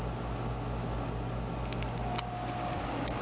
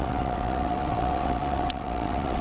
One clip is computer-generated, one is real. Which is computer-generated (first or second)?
second